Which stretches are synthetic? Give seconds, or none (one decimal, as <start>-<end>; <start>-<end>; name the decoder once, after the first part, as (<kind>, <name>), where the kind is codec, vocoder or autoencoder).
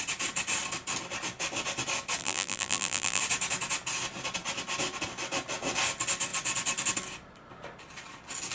2.2-3.2 (vocoder, BigVGAN v2)